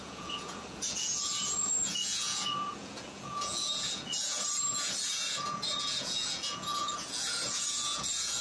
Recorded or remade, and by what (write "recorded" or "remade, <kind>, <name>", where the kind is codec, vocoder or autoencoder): remade, vocoder, Vocos